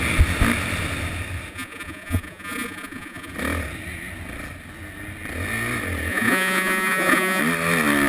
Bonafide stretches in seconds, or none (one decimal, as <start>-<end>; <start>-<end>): 0.0-1.5; 3.3-6.1; 7.4-8.1